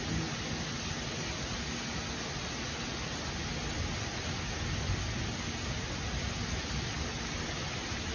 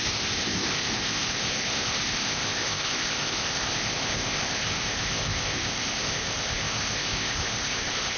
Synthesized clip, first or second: second